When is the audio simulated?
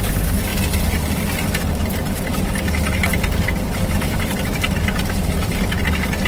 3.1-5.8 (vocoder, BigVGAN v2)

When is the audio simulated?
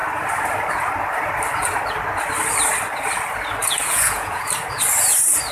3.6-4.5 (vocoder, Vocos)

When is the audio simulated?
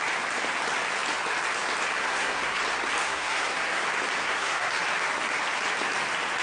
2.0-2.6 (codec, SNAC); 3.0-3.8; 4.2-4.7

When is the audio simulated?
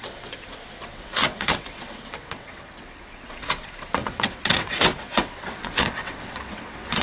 0.0-7.0 (vocoder, WaveNeXt)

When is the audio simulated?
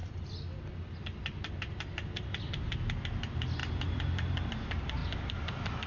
3.6-4.5 (vocoder, BigVGAN v2); 5.0-5.9